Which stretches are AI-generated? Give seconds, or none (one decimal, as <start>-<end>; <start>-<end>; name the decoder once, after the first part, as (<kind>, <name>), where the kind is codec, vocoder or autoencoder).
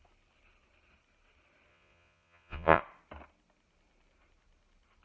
1.7-2.8 (vocoder, Vocos)